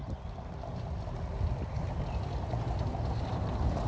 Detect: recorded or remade recorded